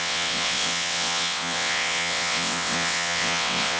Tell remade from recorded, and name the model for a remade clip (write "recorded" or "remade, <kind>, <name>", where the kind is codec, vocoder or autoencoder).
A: remade, vocoder, WaveNeXt